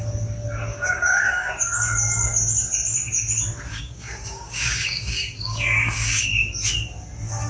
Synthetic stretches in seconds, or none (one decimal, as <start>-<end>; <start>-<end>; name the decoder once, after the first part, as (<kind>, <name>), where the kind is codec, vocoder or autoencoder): 0.7-1.5 (codec, DAC); 3.7-6.5